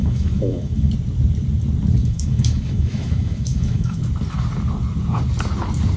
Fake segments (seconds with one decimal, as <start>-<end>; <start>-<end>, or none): 0.0-0.9; 2.0-4.0